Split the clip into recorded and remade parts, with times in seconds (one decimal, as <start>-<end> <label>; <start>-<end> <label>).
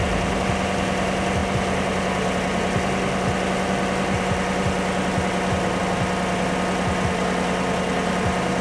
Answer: 0.0-8.6 recorded